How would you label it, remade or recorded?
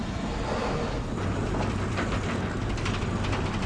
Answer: recorded